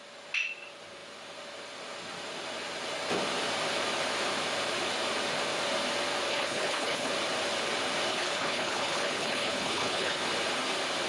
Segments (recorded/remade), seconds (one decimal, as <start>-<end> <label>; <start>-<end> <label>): 0.0-6.3 recorded; 6.3-7.1 remade; 7.1-8.1 recorded; 8.1-10.2 remade; 10.2-11.1 recorded